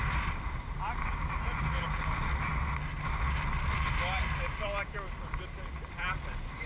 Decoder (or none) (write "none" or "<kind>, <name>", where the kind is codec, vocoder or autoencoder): none